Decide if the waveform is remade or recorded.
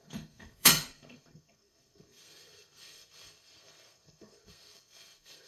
remade